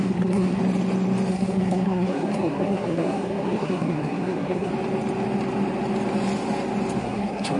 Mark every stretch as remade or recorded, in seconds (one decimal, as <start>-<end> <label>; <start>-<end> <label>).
0.0-0.6 remade; 0.6-1.3 recorded; 1.3-4.7 remade; 4.7-7.0 recorded; 7.0-7.6 remade

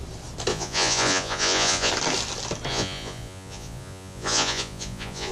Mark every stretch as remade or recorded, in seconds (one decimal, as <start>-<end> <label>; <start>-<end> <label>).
0.0-0.5 recorded; 0.5-1.9 remade; 1.9-2.7 recorded; 2.7-5.3 remade

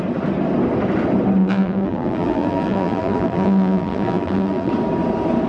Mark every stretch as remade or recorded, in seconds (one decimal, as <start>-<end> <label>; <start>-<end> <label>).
0.0-1.4 recorded; 1.4-4.7 remade; 4.7-5.5 recorded